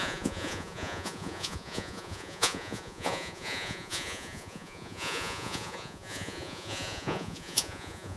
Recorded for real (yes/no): no